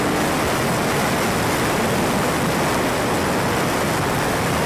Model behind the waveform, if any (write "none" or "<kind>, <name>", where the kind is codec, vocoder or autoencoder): none